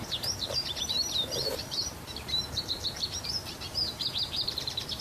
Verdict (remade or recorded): remade